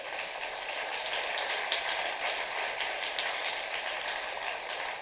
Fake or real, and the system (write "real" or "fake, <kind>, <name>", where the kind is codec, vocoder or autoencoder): real